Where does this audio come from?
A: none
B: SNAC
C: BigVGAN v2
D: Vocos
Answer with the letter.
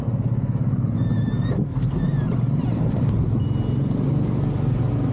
A